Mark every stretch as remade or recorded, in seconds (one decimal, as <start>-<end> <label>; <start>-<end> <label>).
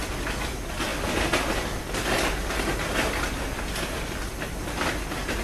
0.0-5.4 recorded